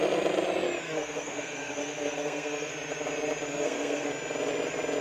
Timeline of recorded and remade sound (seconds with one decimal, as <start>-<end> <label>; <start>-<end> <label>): 0.0-0.8 recorded; 0.8-2.7 remade; 2.7-3.5 recorded; 3.5-4.1 remade; 4.1-5.0 recorded